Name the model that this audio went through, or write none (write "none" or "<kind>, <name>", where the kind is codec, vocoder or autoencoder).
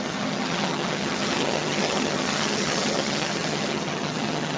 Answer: vocoder, HiFi-GAN